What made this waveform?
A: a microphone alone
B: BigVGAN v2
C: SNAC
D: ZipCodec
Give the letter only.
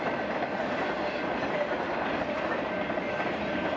A